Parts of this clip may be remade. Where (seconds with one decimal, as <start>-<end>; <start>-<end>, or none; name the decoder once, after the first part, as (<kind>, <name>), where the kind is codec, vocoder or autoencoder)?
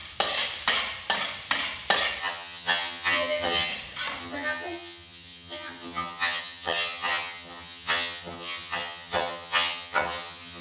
2.2-3.7 (vocoder, HiFi-GAN); 4.2-10.6